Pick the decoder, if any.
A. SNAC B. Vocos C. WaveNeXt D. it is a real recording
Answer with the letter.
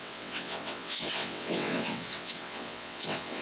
C